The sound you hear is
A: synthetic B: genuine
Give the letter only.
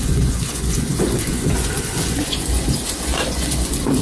A